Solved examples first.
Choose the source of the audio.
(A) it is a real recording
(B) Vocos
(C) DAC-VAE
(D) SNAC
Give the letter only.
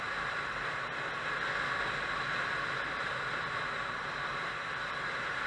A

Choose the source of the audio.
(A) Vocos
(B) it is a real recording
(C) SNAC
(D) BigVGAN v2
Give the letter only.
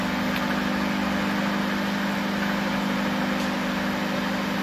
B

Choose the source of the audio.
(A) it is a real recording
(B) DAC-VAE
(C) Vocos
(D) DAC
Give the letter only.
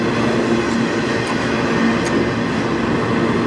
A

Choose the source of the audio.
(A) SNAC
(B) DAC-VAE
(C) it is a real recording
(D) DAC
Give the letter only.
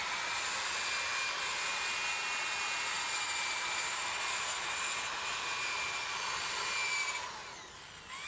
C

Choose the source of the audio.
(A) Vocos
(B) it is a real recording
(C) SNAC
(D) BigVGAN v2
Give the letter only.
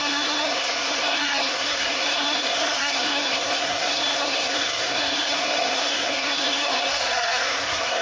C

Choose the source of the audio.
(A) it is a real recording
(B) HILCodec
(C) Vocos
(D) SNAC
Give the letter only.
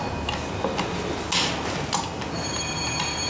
A